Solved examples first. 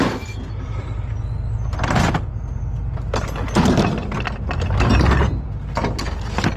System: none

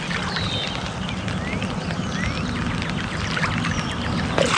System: none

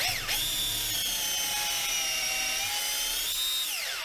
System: none